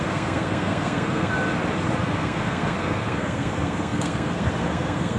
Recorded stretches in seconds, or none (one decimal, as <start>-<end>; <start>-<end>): 1.3-2.0